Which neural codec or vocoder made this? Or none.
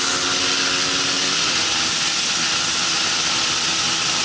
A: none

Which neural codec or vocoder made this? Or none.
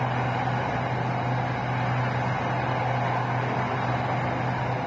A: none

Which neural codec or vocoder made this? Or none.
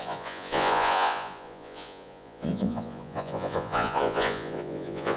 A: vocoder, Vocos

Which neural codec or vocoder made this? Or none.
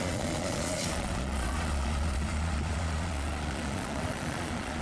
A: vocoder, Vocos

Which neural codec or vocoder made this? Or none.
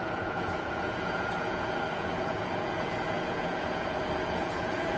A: vocoder, Vocos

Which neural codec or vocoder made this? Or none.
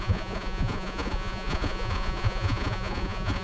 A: vocoder, Vocos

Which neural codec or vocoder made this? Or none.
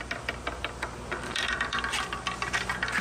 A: none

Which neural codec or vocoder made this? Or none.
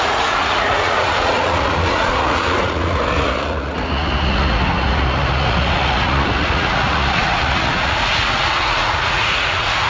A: vocoder, Vocos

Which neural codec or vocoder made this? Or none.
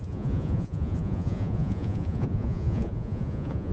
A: vocoder, Vocos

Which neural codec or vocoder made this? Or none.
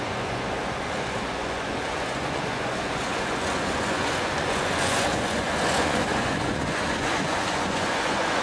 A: vocoder, Vocos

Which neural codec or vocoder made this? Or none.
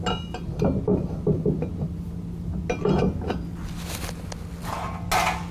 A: none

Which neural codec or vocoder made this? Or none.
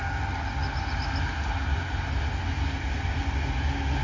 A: none